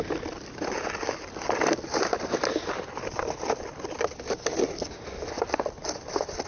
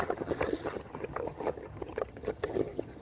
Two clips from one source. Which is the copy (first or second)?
second